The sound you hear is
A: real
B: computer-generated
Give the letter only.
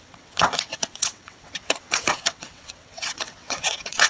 B